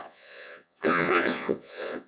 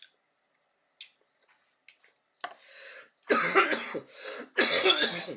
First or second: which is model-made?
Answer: first